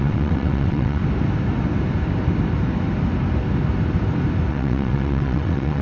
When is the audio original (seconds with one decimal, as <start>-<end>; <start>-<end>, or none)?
1.0-4.5